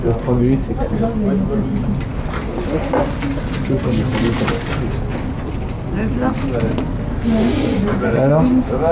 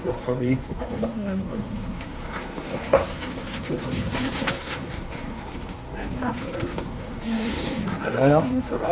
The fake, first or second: second